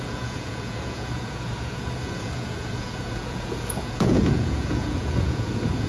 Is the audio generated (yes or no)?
yes